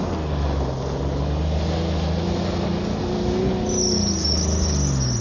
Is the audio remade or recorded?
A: recorded